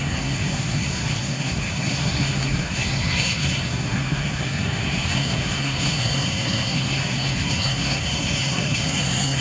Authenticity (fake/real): fake